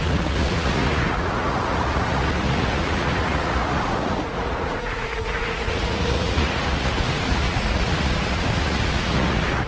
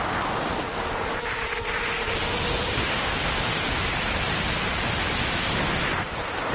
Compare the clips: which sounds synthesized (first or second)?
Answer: first